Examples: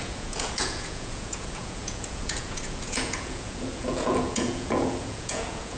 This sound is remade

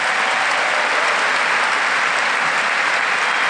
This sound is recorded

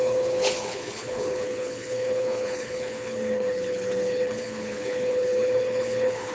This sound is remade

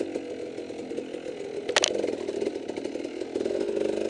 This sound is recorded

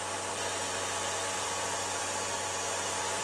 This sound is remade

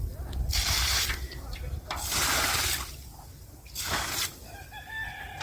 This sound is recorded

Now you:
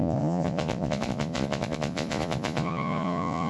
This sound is remade